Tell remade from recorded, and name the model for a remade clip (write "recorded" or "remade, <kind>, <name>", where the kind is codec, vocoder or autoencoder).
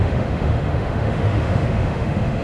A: remade, autoencoder, DAC-VAE